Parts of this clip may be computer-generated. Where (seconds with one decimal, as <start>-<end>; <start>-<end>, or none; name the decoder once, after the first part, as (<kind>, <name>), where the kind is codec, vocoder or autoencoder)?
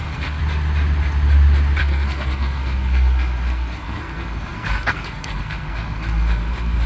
0.0-0.4 (codec, SNAC); 1.8-6.9